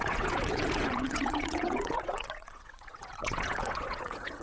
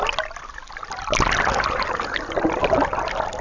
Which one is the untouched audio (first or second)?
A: second